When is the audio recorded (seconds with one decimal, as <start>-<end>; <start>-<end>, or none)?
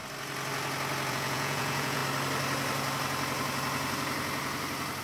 0.0-1.1; 2.0-5.0